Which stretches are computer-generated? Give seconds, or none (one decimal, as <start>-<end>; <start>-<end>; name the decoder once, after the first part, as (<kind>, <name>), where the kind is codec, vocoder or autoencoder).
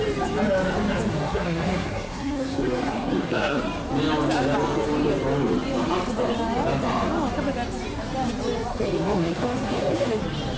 1.1-3.6 (codec, SNAC); 8.7-10.2